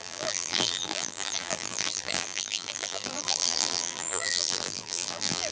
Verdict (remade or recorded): remade